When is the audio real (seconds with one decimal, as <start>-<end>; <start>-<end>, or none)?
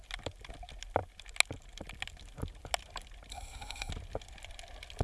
0.0-3.3; 3.9-5.0